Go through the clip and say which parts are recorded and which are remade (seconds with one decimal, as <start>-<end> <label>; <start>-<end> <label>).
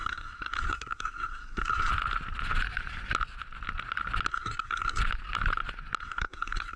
0.0-1.9 remade; 1.9-4.3 recorded; 4.3-5.0 remade; 5.0-6.0 recorded; 6.0-6.8 remade